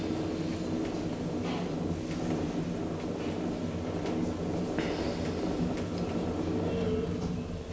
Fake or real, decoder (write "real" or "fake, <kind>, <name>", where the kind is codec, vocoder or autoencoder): real